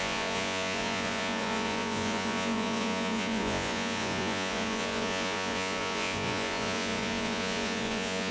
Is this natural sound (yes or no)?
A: no